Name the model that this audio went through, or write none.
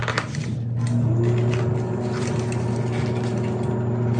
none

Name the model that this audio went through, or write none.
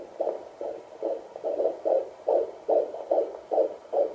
none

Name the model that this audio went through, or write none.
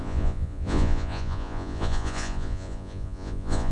vocoder, Vocos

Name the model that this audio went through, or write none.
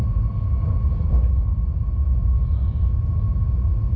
none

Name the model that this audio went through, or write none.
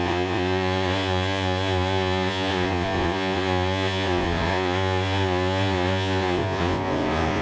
vocoder, Vocos